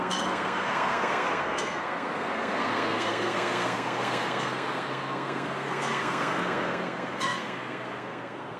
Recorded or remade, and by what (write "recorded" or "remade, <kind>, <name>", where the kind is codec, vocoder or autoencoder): remade, codec, SNAC